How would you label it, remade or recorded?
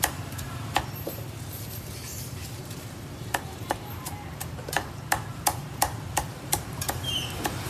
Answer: remade